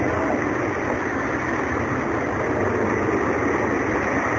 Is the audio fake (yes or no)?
no